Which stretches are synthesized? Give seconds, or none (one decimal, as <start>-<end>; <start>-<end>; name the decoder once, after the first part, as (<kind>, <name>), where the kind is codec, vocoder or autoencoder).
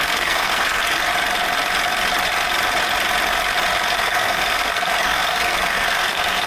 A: 0.0-1.1 (codec, SNAC); 4.0-6.5